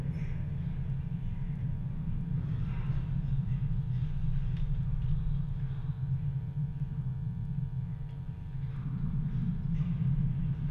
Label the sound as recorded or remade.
recorded